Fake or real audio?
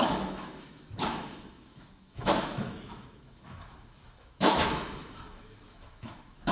fake